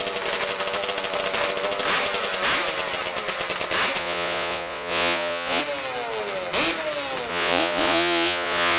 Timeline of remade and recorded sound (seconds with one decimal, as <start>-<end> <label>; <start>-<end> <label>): 0.0-4.0 recorded; 4.0-5.6 remade; 5.6-7.3 recorded; 7.3-8.8 remade